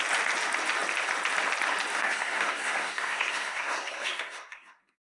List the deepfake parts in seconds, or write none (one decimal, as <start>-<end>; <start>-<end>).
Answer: 1.9-5.1